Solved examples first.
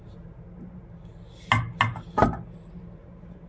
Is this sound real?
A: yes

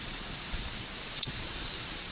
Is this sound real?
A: no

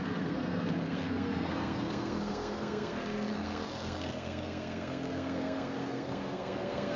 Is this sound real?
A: no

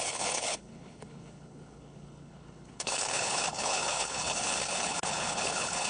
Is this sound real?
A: no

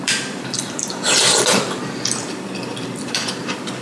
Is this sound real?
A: no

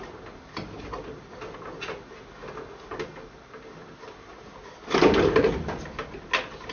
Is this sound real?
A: yes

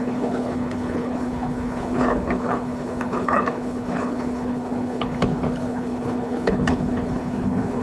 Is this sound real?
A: no